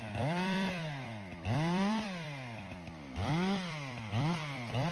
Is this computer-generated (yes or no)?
yes